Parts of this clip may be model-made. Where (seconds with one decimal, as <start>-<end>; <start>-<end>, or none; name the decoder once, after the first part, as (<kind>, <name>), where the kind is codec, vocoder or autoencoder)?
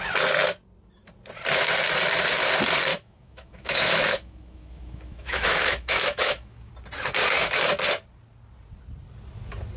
2.9-6.7 (autoencoder, DAC-VAE)